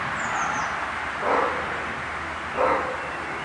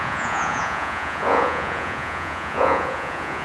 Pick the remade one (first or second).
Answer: second